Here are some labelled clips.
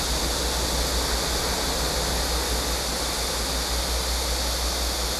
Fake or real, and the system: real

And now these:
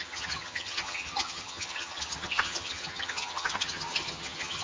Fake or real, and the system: fake, vocoder, HiFi-GAN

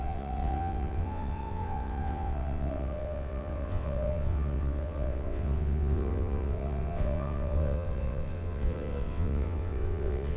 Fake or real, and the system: fake, vocoder, WaveNeXt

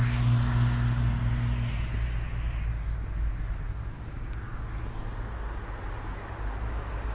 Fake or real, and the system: real